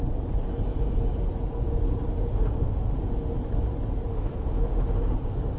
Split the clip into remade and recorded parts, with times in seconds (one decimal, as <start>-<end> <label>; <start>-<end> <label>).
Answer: 0.0-2.2 recorded; 2.2-3.0 remade; 3.0-4.1 recorded; 4.1-5.6 remade